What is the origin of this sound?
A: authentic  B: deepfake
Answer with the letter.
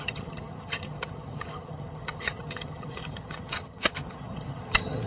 B